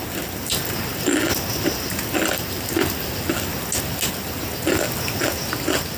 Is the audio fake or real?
real